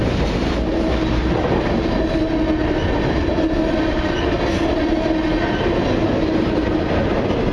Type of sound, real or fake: real